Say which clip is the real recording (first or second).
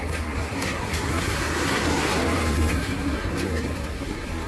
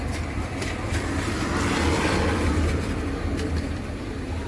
second